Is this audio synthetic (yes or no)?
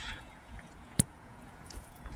yes